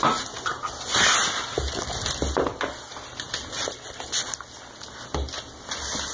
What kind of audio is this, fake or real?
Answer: real